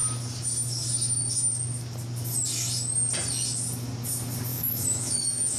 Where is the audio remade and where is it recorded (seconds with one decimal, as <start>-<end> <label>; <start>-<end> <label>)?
0.0-4.5 recorded; 4.5-5.6 remade